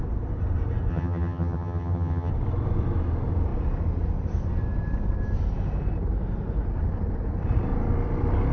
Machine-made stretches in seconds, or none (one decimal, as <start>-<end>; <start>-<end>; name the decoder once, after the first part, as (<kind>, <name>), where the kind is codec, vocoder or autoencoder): 0.9-2.3 (vocoder, HiFi-GAN)